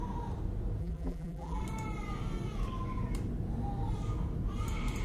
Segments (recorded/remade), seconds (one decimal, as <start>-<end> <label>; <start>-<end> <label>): 0.0-0.8 recorded; 0.8-1.6 remade; 1.6-5.0 recorded